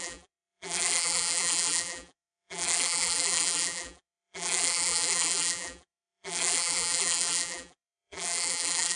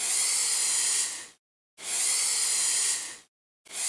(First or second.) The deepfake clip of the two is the first